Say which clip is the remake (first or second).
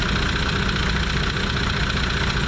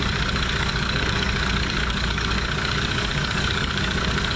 second